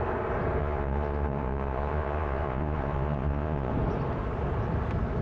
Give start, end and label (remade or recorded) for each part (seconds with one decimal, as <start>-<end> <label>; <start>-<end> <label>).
0.0-0.6 recorded; 0.6-3.7 remade; 3.7-5.2 recorded